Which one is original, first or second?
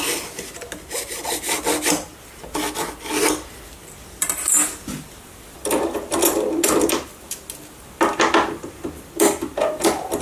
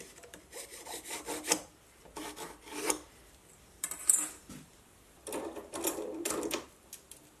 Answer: first